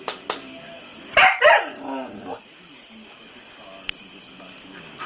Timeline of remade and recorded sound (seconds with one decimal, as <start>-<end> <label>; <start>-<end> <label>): 0.0-5.1 recorded